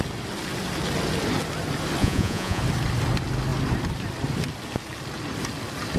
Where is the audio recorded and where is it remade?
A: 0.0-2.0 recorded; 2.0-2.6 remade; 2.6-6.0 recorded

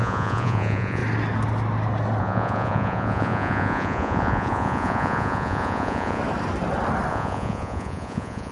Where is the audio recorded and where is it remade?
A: 0.0-1.0 remade; 1.0-2.2 recorded; 2.2-6.2 remade; 6.2-7.1 recorded; 7.1-8.5 remade